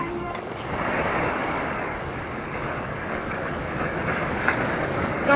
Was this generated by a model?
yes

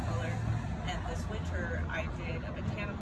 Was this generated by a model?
no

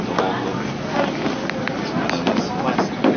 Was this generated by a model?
no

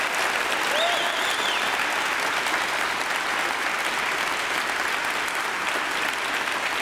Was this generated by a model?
no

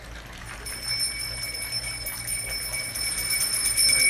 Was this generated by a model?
no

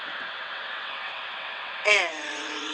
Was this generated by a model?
yes